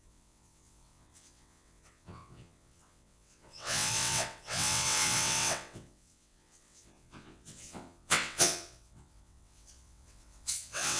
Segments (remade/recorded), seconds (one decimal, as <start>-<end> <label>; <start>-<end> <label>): 0.0-11.0 remade